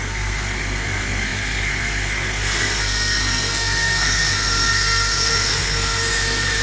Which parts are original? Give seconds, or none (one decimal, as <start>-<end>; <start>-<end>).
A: none